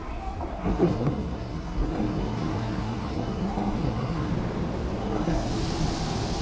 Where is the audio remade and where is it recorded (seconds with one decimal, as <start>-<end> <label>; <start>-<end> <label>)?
0.0-0.5 recorded; 0.5-4.3 remade; 4.3-5.0 recorded; 5.0-5.5 remade; 5.5-6.4 recorded